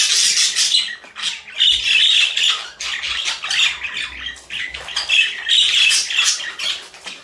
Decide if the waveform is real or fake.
real